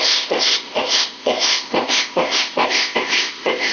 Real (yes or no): no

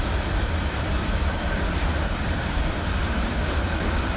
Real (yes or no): no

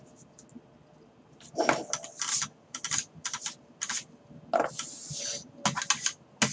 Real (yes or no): yes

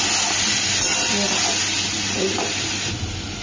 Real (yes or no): yes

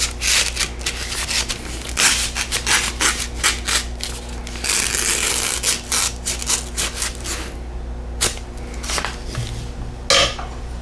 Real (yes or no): yes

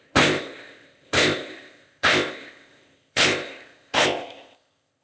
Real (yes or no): no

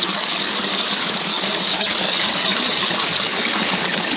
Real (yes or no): no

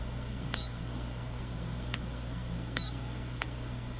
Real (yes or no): no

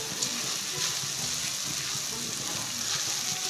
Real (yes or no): yes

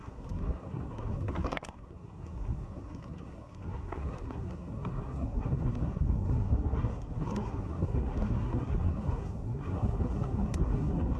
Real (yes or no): no